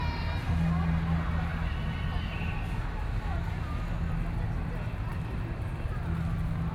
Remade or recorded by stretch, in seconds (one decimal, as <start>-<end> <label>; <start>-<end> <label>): 0.0-6.7 recorded